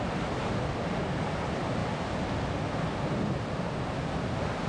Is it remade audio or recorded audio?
recorded